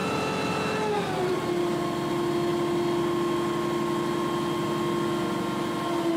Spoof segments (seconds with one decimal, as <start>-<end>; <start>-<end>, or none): none